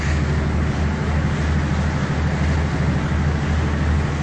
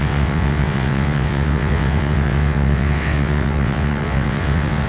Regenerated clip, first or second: second